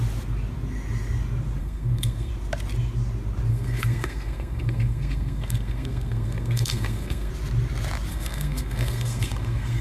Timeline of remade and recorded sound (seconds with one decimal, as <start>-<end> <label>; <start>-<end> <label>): 0.0-1.6 recorded; 1.6-2.3 remade; 2.3-3.5 recorded; 3.5-7.3 remade; 7.3-8.1 recorded; 8.1-9.8 remade